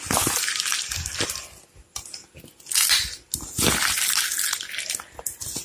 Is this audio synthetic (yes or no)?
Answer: no